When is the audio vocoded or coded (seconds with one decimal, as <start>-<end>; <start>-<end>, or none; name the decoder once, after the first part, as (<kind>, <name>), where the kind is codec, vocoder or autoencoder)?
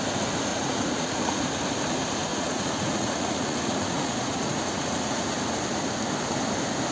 0.5-1.4 (vocoder, Vocos); 2.3-5.3